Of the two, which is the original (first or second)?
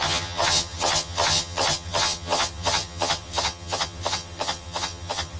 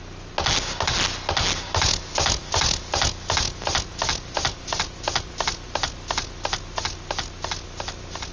second